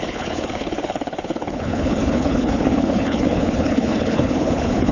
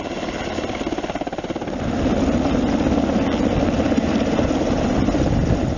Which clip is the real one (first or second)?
second